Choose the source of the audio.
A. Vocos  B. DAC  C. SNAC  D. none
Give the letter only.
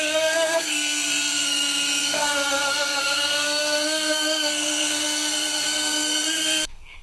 C